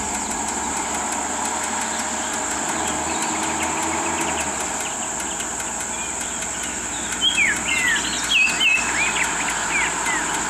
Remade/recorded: recorded